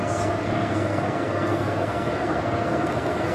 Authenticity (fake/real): fake